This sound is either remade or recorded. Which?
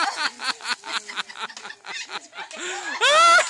recorded